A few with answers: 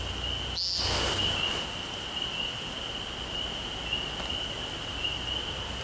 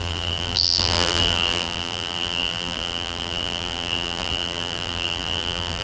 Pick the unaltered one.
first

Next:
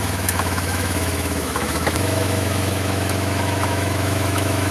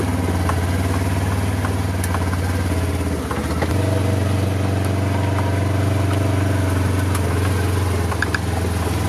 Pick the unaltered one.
second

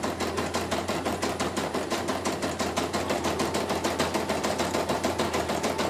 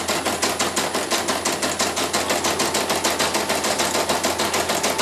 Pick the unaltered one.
second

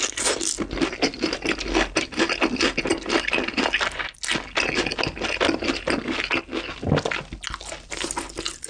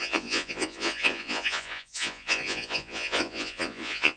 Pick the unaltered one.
first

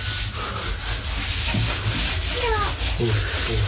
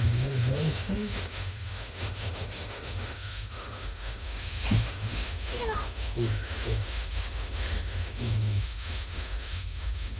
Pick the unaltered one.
first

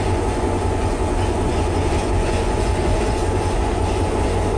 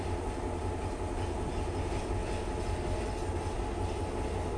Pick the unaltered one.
second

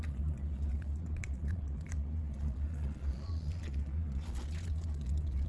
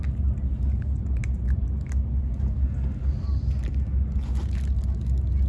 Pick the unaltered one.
second